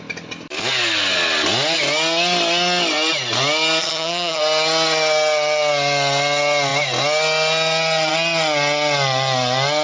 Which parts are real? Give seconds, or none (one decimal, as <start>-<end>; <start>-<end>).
0.0-3.8; 4.4-9.8